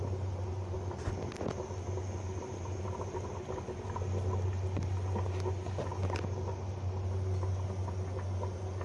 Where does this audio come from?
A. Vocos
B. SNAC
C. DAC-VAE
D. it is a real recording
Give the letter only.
D